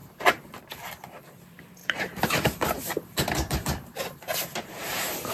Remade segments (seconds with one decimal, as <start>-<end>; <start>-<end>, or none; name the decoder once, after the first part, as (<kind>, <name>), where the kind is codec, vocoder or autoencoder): 0.0-0.7 (vocoder, BigVGAN v2); 1.8-5.3